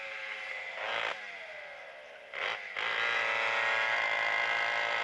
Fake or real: real